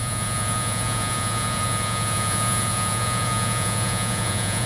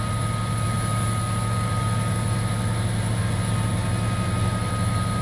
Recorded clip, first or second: second